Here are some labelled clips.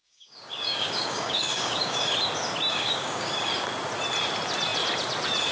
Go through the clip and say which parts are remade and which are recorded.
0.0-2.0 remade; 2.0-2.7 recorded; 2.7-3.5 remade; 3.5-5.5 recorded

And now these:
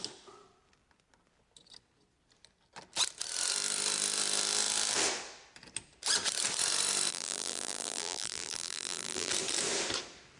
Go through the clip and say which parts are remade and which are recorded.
0.0-7.1 recorded; 7.1-9.3 remade; 9.3-10.4 recorded

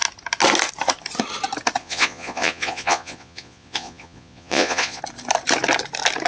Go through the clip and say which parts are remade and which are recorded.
0.0-1.8 recorded; 1.8-5.0 remade; 5.0-6.3 recorded

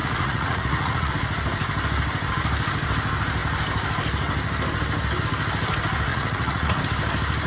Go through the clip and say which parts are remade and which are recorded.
0.0-1.1 remade; 1.1-6.1 recorded; 6.1-6.8 remade; 6.8-7.5 recorded

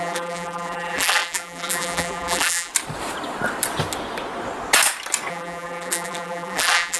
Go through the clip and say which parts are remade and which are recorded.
0.0-2.7 remade; 2.7-5.3 recorded; 5.3-7.0 remade

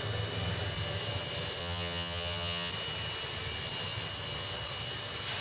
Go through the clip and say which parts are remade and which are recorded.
0.0-1.6 recorded; 1.6-2.7 remade; 2.7-5.4 recorded